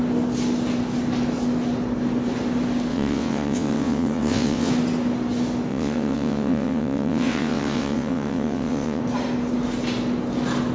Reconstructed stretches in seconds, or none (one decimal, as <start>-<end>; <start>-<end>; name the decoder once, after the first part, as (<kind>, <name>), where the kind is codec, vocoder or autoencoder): 2.9-4.7 (vocoder, WaveNeXt); 5.7-9.0